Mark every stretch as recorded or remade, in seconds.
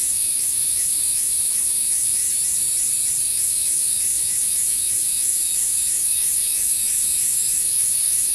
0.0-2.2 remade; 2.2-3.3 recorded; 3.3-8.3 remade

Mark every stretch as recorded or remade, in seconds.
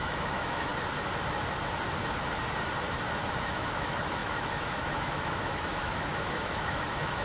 0.0-0.7 remade; 0.7-3.4 recorded; 3.4-7.2 remade